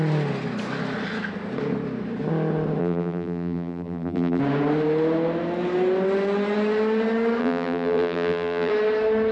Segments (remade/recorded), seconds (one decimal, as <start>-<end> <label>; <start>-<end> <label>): 0.0-2.8 recorded; 2.8-4.4 remade; 4.4-7.4 recorded; 7.4-8.7 remade; 8.7-9.3 recorded